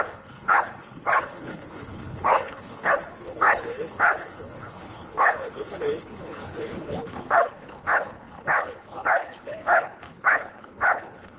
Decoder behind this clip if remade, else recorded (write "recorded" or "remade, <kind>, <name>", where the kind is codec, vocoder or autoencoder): remade, codec, HILCodec